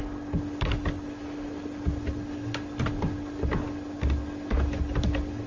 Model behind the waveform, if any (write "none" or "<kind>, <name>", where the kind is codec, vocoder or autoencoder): none